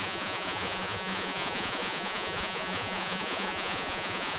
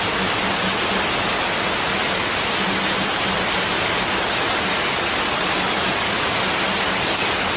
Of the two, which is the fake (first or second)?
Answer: first